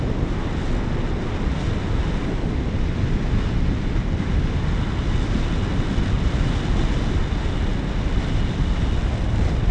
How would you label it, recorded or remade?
recorded